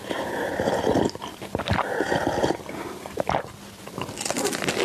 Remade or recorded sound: recorded